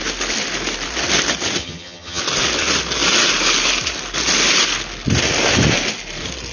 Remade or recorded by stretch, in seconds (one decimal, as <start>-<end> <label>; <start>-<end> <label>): 0.0-1.6 recorded; 1.6-2.2 remade; 2.2-6.5 recorded